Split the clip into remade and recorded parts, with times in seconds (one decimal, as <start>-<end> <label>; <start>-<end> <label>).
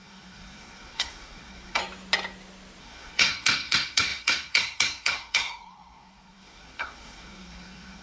0.0-1.8 remade; 1.8-2.8 recorded; 2.8-8.0 remade